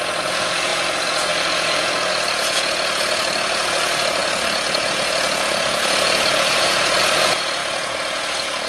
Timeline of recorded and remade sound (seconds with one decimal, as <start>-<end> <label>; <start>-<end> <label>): 0.0-8.7 remade